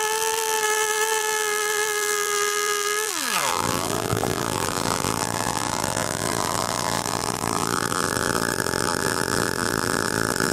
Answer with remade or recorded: remade